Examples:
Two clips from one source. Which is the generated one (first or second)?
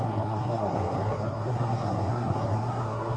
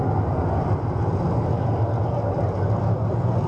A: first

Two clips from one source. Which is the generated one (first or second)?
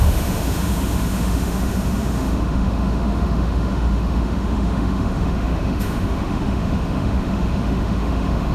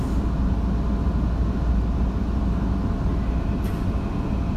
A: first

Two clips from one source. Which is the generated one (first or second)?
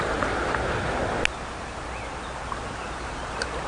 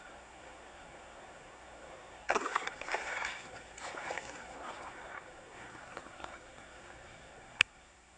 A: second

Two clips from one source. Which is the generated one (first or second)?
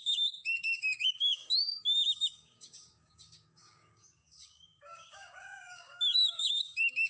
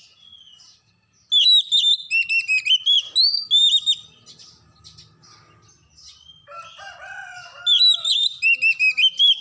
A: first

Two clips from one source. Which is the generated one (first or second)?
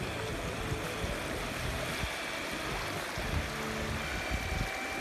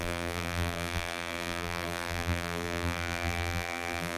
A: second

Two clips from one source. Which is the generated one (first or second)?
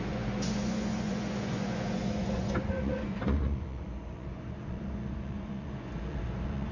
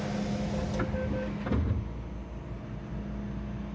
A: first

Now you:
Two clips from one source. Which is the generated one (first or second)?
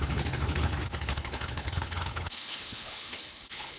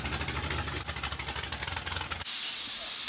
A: first